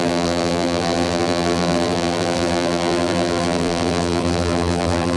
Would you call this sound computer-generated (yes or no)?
yes